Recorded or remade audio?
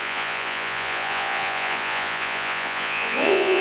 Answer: remade